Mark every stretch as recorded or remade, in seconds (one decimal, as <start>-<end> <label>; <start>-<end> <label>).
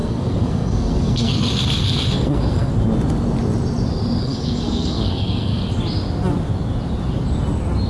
0.0-2.7 remade; 2.7-4.2 recorded; 4.2-5.6 remade; 5.6-7.9 recorded